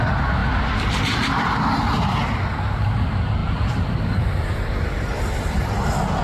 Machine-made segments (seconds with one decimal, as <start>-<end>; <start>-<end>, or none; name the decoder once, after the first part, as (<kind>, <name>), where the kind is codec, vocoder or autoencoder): 0.4-1.7 (vocoder, BigVGAN v2); 3.4-5.6